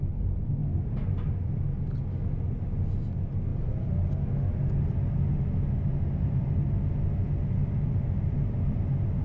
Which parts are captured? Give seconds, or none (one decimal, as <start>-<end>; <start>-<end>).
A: 0.0-9.2